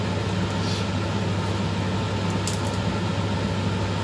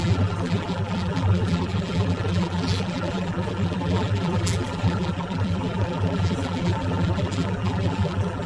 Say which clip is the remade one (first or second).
second